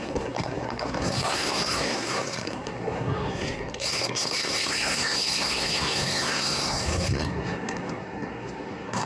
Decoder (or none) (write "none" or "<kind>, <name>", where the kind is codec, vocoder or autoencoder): codec, SNAC